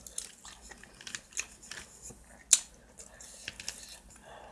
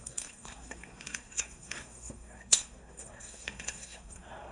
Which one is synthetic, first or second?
second